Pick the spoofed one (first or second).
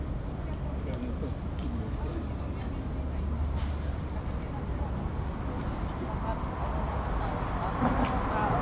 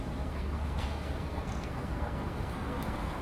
second